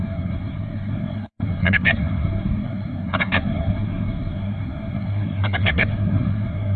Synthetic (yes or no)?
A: yes